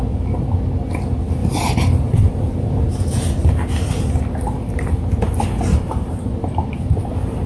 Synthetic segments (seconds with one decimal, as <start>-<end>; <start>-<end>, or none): 1.4-2.9; 5.7-6.3